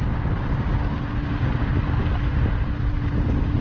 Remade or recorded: recorded